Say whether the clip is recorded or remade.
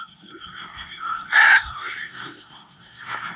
remade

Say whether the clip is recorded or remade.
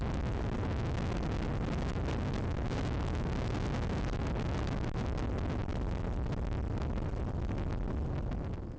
recorded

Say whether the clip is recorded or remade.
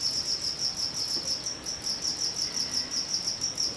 recorded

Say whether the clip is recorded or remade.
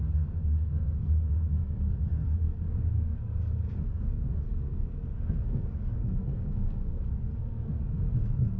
remade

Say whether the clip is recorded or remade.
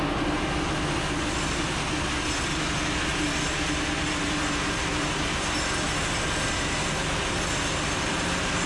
recorded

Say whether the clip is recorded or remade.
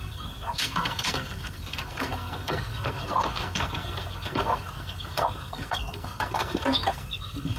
remade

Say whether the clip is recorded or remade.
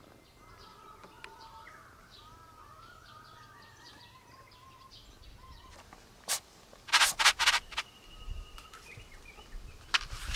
recorded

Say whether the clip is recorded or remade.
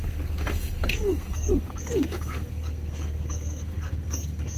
remade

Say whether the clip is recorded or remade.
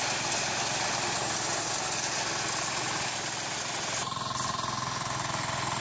recorded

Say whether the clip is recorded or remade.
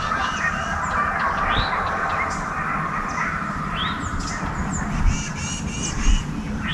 recorded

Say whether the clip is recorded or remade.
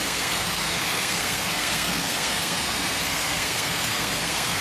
remade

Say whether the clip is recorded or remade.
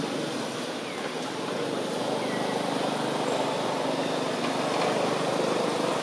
recorded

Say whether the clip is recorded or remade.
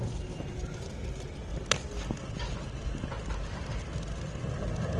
recorded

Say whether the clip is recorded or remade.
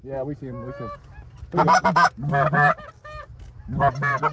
recorded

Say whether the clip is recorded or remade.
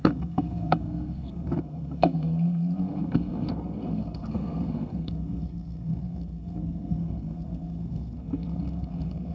remade